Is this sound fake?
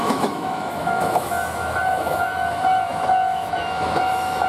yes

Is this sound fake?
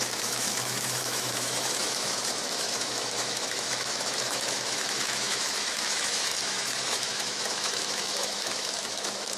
yes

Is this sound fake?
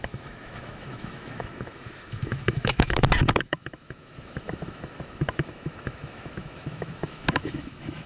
yes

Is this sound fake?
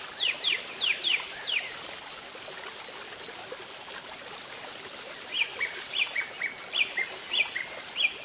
no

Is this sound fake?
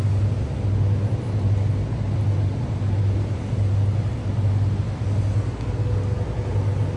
no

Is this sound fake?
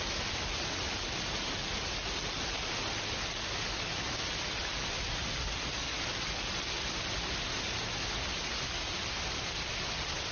no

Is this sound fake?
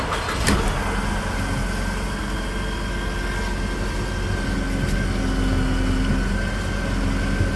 no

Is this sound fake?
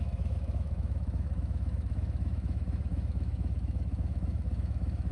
yes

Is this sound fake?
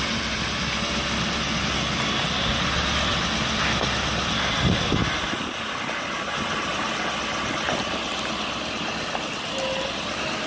no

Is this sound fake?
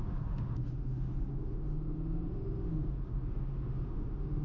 yes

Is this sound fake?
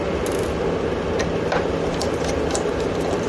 no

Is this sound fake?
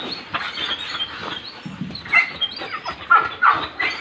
no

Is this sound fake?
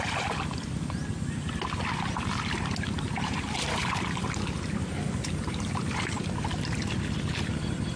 no